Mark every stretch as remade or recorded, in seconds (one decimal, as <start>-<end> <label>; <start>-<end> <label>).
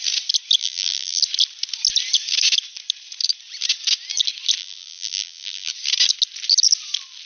0.0-0.6 recorded; 0.6-1.2 remade; 1.2-4.6 recorded; 4.6-5.7 remade; 5.7-7.3 recorded